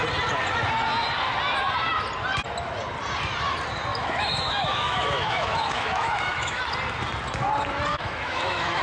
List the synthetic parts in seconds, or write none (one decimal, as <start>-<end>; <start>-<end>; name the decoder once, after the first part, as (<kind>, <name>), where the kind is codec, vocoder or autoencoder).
3.9-6.6 (autoencoder, DAC-VAE); 7.9-8.8